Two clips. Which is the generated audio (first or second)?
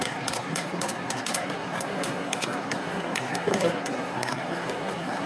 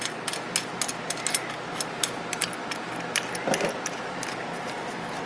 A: first